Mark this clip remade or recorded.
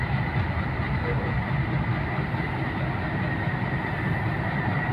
recorded